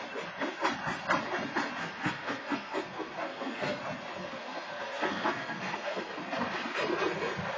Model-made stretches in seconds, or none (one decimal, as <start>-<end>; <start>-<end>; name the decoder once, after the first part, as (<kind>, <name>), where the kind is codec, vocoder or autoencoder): 1.8-3.8 (codec, SNAC); 4.2-6.1